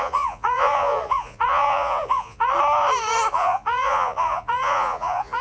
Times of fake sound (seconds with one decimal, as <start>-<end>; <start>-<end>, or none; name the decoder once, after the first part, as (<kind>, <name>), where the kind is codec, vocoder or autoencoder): 0.0-2.5 (vocoder, Vocos); 3.3-5.4